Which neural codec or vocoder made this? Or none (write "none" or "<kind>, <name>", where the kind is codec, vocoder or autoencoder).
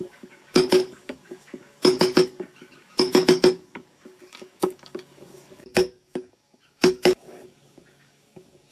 codec, DAC